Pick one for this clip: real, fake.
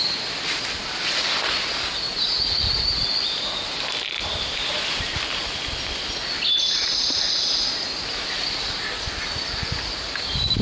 real